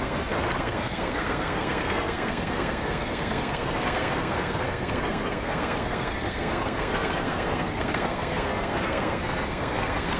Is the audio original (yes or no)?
no